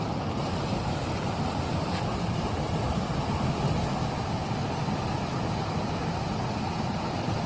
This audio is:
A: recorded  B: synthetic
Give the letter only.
A